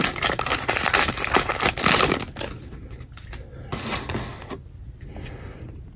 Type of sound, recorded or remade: recorded